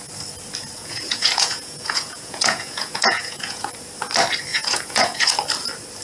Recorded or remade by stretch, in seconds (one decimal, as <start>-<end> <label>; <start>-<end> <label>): 0.0-0.8 recorded; 0.8-3.7 remade; 3.7-4.5 recorded; 4.5-5.3 remade; 5.3-6.0 recorded